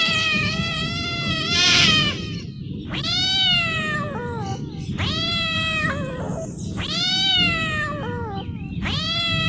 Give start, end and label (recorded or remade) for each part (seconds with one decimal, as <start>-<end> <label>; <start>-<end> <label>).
0.0-4.5 remade; 4.5-5.1 recorded; 5.1-9.5 remade

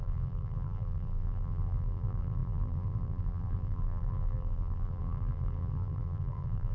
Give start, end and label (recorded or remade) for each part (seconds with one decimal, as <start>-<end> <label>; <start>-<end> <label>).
0.0-6.7 remade

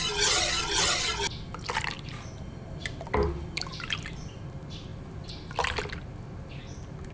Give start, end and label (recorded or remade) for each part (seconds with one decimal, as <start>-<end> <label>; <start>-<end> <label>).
0.0-2.8 recorded; 2.8-4.4 remade; 4.4-4.9 recorded; 4.9-5.5 remade; 5.5-7.1 recorded

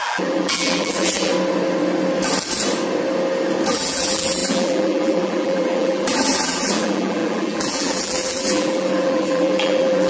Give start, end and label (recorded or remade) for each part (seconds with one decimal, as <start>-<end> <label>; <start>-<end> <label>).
0.0-1.3 remade; 1.3-3.7 recorded; 3.7-10.1 remade

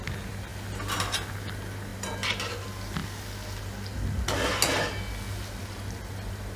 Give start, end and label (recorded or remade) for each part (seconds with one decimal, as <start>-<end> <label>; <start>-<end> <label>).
0.0-6.6 recorded

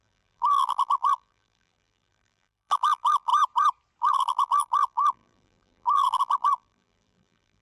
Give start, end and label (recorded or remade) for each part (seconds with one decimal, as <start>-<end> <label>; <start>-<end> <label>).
0.0-3.3 remade; 3.3-4.0 recorded; 4.0-7.6 remade

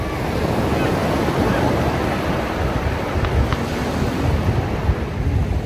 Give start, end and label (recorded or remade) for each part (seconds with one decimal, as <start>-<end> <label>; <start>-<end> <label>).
0.0-5.7 recorded